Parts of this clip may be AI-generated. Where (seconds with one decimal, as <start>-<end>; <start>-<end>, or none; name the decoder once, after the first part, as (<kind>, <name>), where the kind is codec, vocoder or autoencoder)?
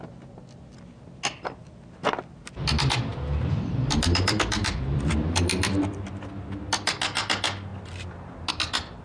1.6-2.4 (vocoder, BigVGAN v2); 3.1-6.1